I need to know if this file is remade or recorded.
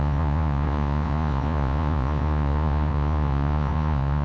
remade